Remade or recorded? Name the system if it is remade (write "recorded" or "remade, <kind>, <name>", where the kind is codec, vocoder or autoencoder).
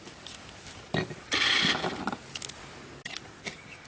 recorded